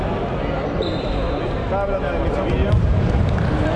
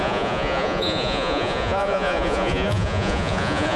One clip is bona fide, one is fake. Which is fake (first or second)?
second